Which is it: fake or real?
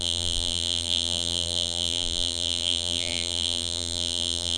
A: fake